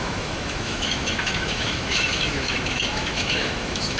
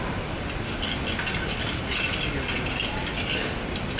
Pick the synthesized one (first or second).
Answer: first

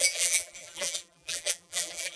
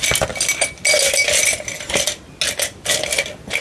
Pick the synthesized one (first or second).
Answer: first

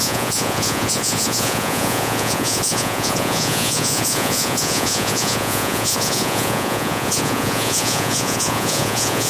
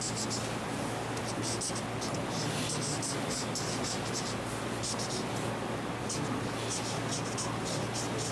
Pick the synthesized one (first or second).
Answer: first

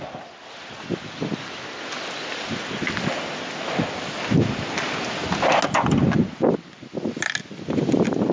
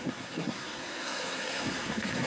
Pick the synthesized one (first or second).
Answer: second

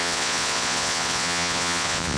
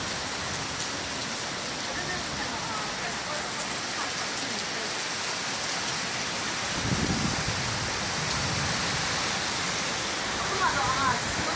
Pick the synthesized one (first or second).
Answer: first